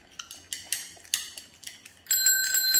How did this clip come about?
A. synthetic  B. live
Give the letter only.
B